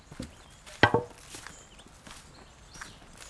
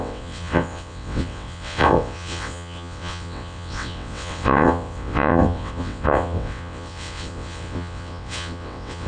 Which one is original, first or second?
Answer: first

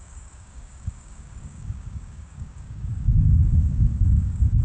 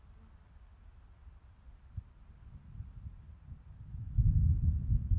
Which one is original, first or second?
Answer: second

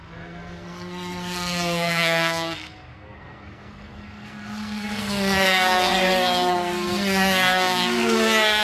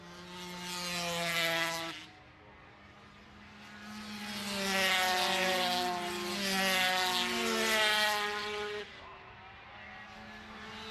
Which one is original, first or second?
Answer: second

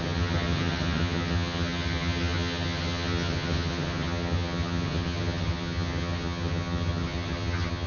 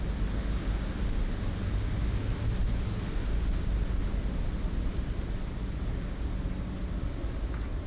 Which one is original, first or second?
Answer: second